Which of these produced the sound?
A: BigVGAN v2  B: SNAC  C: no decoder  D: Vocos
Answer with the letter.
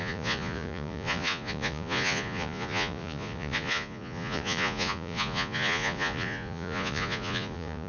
D